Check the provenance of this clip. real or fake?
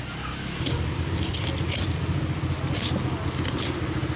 real